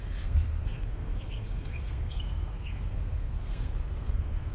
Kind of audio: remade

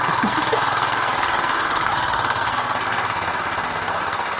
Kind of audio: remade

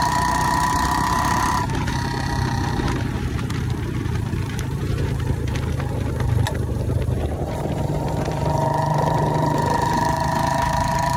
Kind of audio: remade